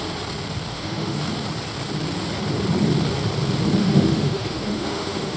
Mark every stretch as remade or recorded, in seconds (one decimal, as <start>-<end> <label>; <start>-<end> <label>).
0.0-0.7 recorded; 0.7-1.2 remade; 1.2-3.8 recorded; 3.8-5.4 remade